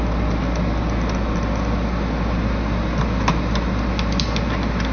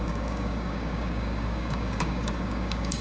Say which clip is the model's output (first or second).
second